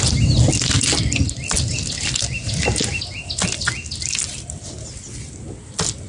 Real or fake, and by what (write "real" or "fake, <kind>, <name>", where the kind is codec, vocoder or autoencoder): real